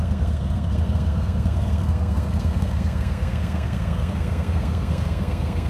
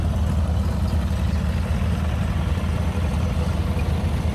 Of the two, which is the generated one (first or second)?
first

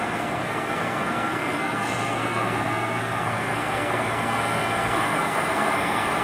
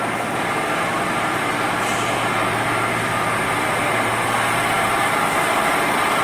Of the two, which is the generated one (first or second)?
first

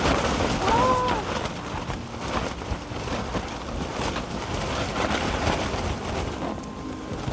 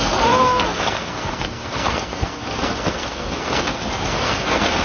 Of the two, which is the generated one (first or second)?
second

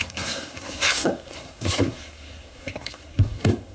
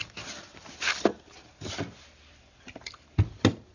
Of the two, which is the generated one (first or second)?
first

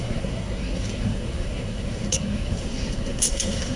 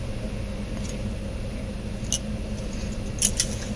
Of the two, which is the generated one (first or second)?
first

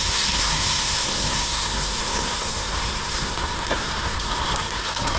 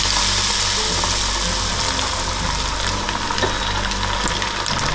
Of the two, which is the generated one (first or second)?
first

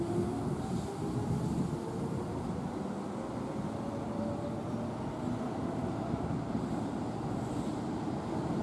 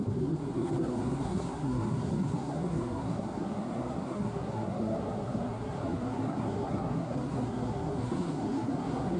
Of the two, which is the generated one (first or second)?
second